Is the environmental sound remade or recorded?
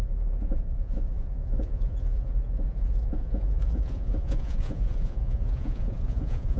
remade